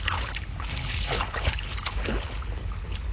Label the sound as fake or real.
fake